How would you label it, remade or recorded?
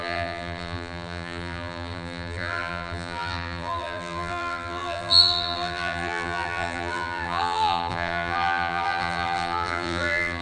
remade